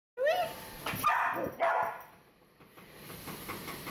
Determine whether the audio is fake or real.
real